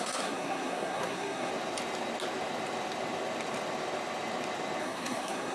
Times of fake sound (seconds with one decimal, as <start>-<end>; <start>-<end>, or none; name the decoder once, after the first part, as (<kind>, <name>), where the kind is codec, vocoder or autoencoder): 0.0-1.5 (codec, SNAC); 4.8-5.5